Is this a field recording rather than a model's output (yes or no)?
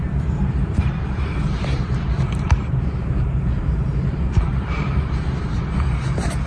no